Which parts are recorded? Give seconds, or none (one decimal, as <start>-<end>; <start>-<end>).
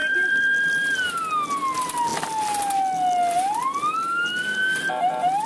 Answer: 1.1-5.5